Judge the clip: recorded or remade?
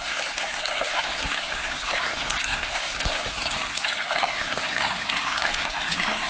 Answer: remade